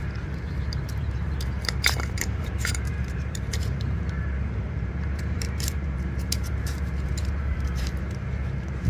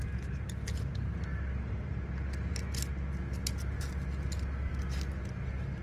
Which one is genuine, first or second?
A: second